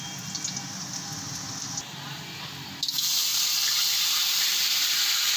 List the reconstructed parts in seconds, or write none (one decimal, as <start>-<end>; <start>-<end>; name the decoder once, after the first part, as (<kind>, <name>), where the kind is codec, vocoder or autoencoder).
3.3-4.7 (vocoder, BigVGAN v2)